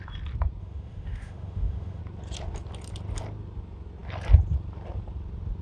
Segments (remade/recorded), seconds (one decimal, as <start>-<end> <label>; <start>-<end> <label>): 0.0-0.6 recorded; 0.6-2.0 remade; 2.0-5.6 recorded